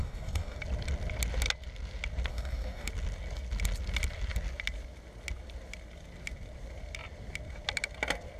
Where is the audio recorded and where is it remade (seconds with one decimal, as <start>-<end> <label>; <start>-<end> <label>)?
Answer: 0.0-0.6 remade; 0.6-2.3 recorded; 2.3-2.9 remade; 2.9-8.4 recorded